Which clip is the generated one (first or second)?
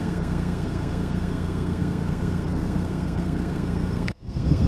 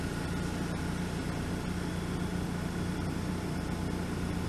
first